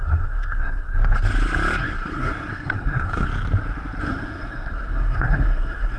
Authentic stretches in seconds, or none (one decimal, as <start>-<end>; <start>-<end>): 1.0-1.8; 3.3-4.0